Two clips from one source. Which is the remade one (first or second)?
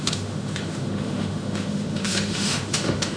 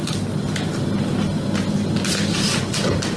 first